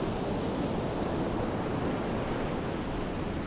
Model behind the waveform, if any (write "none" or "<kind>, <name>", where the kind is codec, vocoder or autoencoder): none